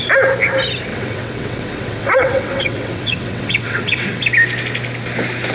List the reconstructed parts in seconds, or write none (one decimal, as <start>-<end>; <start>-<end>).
0.9-4.2